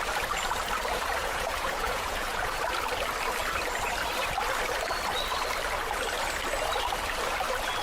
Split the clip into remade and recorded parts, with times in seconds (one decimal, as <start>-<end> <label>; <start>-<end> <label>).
0.0-1.2 recorded; 1.2-2.6 remade; 2.6-7.8 recorded